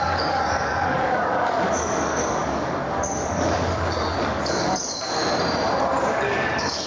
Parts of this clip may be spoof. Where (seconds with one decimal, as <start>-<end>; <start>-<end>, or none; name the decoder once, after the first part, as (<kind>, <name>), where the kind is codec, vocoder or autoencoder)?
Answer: 0.0-5.2 (codec, DAC); 6.0-6.9